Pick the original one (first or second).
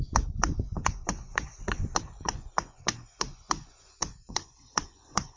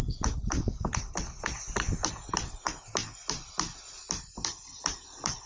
second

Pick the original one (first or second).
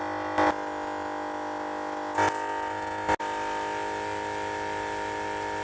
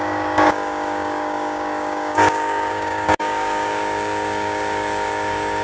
first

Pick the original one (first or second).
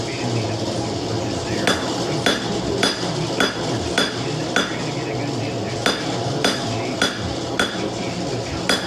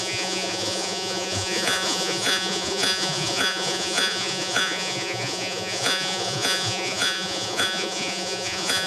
first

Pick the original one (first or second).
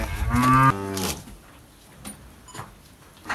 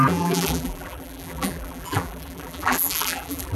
first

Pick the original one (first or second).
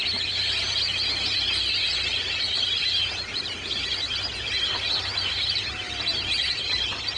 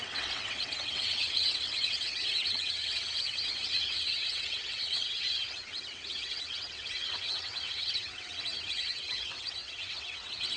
first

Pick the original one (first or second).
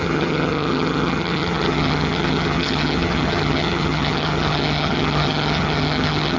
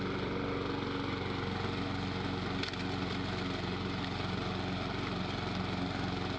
second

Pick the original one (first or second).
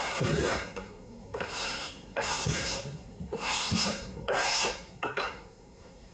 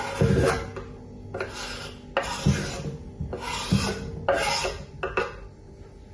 second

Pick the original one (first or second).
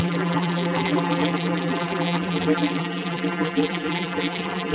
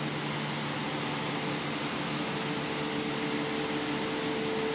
second